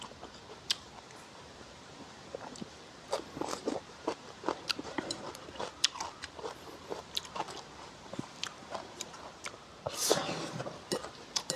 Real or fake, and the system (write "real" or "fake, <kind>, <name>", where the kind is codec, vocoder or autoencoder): fake, vocoder, BigVGAN v2